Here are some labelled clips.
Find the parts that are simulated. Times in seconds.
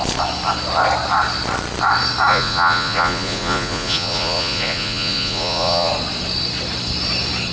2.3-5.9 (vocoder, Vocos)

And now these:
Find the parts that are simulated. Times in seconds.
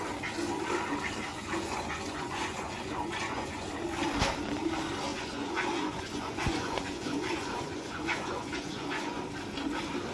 1.3-3.7 (vocoder, Vocos); 5.1-9.2